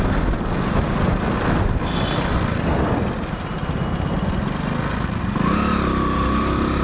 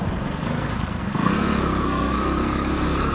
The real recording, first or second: first